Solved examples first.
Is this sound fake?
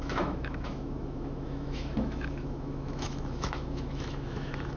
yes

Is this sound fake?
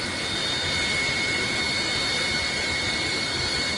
no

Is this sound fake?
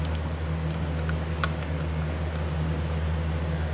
no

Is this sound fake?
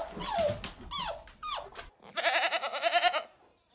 no